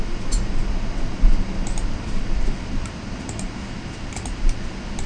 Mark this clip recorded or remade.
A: recorded